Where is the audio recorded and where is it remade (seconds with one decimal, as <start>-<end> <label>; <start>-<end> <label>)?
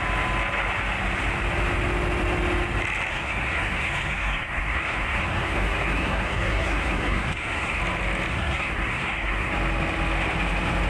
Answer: 0.0-3.1 recorded; 3.1-7.8 remade; 7.8-8.3 recorded; 8.3-9.5 remade; 9.5-10.9 recorded